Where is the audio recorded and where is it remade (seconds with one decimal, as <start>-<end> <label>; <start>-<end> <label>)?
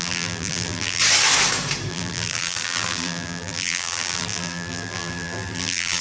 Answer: 0.0-1.0 remade; 1.0-1.9 recorded; 1.9-6.0 remade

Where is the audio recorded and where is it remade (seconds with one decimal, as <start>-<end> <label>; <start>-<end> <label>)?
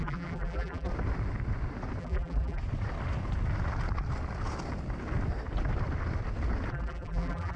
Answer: 0.0-0.9 remade; 0.9-2.0 recorded; 2.0-2.6 remade; 2.6-6.7 recorded; 6.7-7.6 remade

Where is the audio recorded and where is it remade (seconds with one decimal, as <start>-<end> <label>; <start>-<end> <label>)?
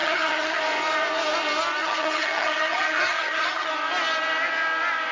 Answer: 0.0-0.6 remade; 0.6-1.8 recorded; 1.8-3.7 remade; 3.7-5.1 recorded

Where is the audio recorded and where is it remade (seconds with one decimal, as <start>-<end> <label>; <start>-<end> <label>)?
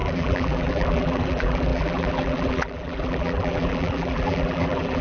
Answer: 0.0-5.0 remade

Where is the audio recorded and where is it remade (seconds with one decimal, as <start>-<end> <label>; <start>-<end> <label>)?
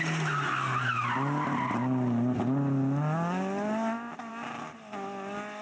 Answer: 0.0-5.6 recorded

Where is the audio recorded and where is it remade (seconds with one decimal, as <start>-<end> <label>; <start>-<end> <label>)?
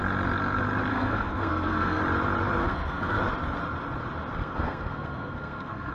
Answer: 0.0-0.9 recorded; 0.9-2.0 remade; 2.0-2.6 recorded; 2.6-3.2 remade; 3.2-4.4 recorded; 4.4-5.9 remade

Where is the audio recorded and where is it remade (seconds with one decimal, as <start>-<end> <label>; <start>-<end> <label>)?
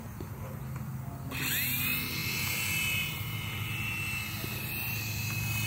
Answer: 0.0-5.7 recorded